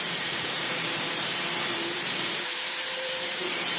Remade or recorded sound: remade